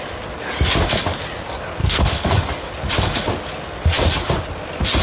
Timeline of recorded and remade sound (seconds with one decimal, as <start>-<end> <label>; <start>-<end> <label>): 0.0-1.8 recorded; 1.8-2.3 remade; 2.3-5.0 recorded